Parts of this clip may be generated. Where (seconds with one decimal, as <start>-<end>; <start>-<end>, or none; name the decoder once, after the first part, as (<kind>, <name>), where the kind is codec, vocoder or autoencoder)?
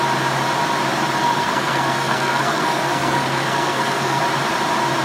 1.2-4.2 (codec, SNAC)